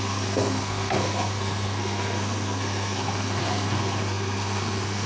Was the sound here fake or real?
fake